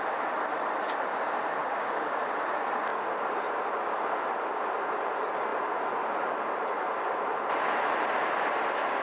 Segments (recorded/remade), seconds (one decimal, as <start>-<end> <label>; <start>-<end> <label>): 0.0-1.6 recorded; 1.6-2.2 remade; 2.2-9.0 recorded